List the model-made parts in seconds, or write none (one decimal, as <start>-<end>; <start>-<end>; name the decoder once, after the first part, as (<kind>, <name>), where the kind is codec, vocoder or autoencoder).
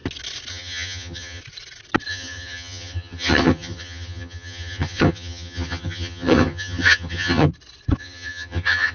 0.5-1.4 (vocoder, HiFi-GAN); 2.1-7.5; 8.0-8.9